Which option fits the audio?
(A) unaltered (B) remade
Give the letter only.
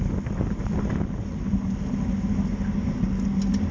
A